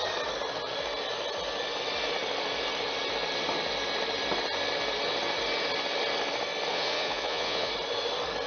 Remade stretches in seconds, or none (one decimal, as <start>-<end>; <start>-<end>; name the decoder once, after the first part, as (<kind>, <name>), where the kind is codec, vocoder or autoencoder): 6.7-7.7 (vocoder, Vocos)